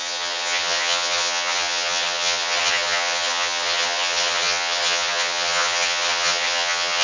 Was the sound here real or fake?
fake